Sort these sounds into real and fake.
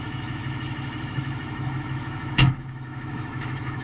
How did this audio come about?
fake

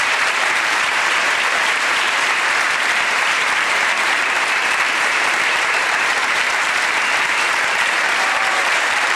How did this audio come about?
fake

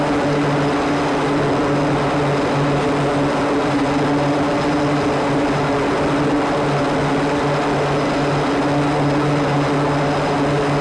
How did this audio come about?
real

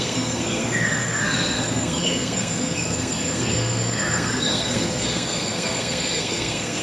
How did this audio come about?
fake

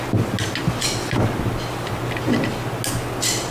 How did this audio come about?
real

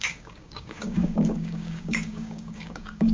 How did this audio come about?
fake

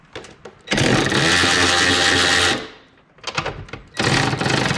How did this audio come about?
real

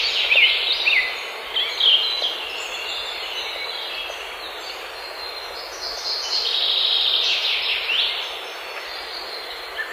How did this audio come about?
real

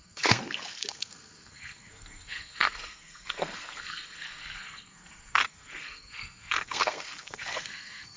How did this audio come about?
fake